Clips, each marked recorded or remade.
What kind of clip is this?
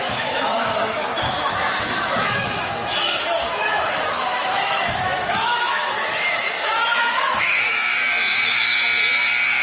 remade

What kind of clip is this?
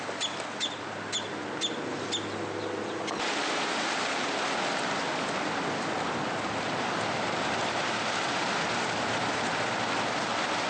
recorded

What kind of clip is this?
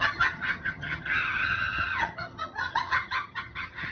remade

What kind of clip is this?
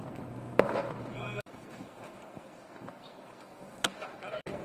remade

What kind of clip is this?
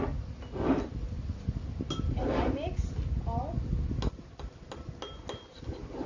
recorded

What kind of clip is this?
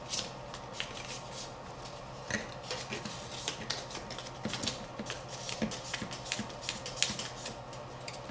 recorded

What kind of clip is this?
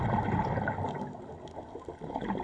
recorded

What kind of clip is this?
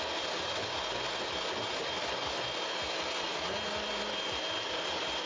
recorded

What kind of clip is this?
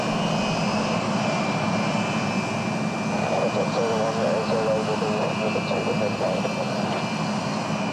recorded